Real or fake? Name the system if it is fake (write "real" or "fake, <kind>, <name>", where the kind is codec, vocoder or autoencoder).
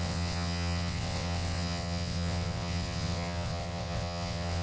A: fake, vocoder, WaveNeXt